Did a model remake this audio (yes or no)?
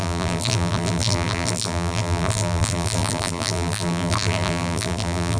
yes